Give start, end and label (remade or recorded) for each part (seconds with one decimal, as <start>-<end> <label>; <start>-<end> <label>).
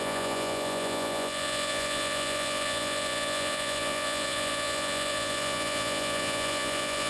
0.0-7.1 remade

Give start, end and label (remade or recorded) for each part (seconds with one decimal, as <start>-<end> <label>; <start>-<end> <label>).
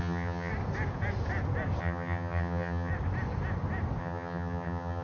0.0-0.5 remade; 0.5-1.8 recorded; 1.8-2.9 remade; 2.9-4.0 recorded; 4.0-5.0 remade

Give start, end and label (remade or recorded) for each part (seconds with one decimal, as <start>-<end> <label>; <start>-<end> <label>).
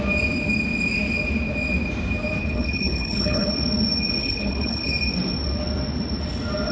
0.0-2.4 recorded; 2.4-3.5 remade; 3.5-4.2 recorded; 4.2-4.9 remade; 4.9-6.7 recorded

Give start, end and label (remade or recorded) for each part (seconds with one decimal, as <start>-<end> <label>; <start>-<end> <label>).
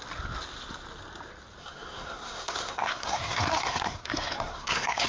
0.0-1.6 recorded; 1.6-5.1 remade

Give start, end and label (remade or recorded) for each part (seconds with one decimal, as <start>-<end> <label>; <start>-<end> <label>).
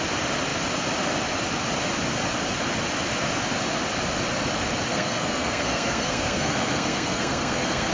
0.0-4.9 recorded; 4.9-7.9 remade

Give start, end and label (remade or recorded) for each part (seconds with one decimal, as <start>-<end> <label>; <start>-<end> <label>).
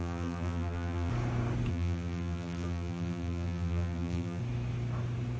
0.0-1.1 remade; 1.1-1.7 recorded; 1.7-4.4 remade; 4.4-5.4 recorded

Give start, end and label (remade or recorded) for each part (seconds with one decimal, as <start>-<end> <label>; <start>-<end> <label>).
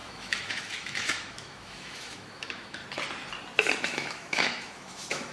0.0-2.8 remade; 2.8-3.8 recorded; 3.8-5.3 remade